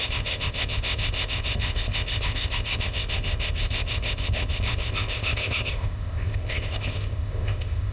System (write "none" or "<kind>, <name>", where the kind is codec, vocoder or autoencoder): codec, ZipCodec